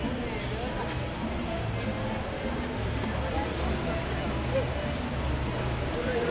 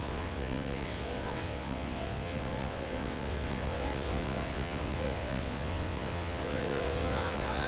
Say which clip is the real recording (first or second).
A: first